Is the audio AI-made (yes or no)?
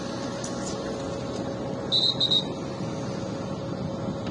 no